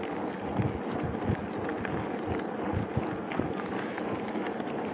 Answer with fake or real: real